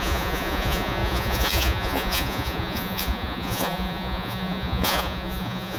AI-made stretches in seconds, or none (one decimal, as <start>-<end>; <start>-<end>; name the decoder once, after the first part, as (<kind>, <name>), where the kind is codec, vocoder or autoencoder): 0.0-5.8 (vocoder, Vocos)